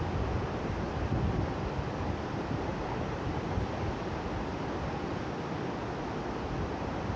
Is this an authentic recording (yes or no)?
yes